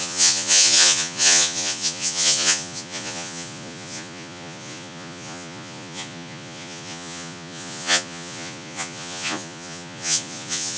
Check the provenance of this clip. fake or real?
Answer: fake